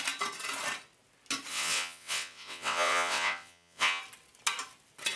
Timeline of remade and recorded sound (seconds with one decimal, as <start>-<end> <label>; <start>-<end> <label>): 0.0-1.5 recorded; 1.5-4.0 remade; 4.0-5.2 recorded